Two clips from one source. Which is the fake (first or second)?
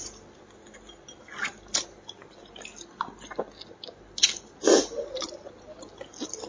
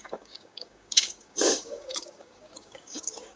second